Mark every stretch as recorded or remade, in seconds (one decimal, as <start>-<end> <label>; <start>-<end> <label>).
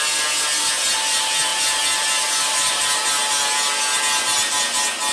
0.0-5.1 recorded